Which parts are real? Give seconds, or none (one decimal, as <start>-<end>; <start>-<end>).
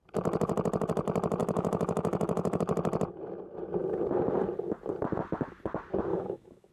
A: 0.0-1.4; 2.6-6.1